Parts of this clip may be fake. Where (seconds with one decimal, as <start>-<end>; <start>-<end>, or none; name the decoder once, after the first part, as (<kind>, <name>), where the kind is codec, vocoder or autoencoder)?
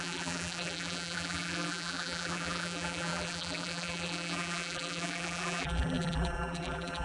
0.0-7.0 (vocoder, BigVGAN v2)